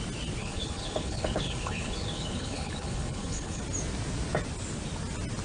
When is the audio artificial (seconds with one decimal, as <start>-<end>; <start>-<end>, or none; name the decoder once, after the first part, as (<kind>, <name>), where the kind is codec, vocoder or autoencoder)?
0.4-3.6 (codec, HILCodec)